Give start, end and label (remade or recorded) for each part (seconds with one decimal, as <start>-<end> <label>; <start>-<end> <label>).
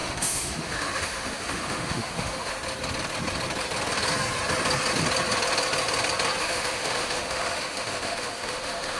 0.0-2.5 remade; 2.5-6.4 recorded; 6.4-9.0 remade